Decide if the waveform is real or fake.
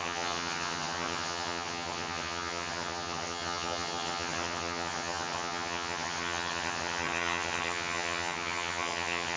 fake